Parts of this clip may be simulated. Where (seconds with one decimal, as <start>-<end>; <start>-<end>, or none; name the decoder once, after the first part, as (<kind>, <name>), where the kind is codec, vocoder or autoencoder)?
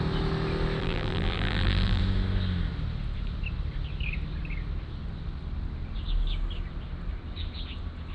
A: 0.8-2.0 (vocoder, BigVGAN v2)